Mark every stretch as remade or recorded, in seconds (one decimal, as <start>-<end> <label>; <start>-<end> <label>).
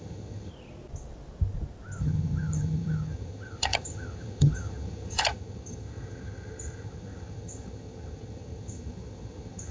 0.0-0.5 remade; 0.5-2.0 recorded; 2.0-9.7 remade